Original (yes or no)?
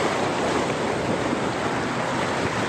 yes